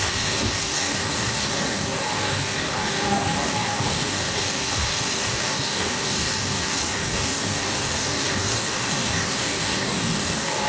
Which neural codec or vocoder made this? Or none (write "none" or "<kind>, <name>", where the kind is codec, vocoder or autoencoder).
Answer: codec, DAC